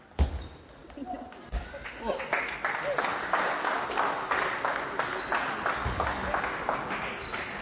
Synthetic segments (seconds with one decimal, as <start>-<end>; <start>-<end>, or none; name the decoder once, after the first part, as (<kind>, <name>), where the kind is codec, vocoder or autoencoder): none